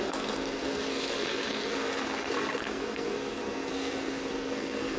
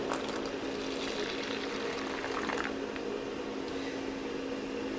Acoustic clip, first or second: second